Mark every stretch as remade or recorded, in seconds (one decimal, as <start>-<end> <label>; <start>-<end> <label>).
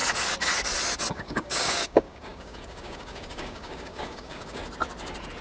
0.0-1.1 recorded; 1.1-4.6 remade; 4.6-5.4 recorded